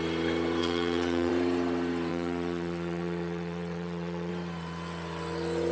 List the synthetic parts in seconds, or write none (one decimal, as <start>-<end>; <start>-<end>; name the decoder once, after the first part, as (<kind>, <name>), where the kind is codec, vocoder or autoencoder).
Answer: 0.6-1.3 (vocoder, WaveNeXt); 2.1-4.3